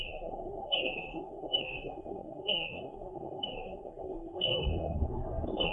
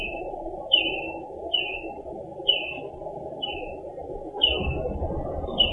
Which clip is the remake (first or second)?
first